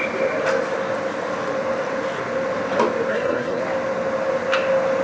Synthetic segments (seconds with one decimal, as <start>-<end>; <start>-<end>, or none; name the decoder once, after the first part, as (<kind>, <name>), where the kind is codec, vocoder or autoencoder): 3.1-3.6 (codec, SNAC)